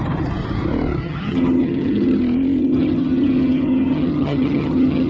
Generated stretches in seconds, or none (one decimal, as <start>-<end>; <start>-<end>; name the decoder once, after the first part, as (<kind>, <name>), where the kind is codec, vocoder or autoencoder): 1.0-2.2 (vocoder, HiFi-GAN); 2.6-5.1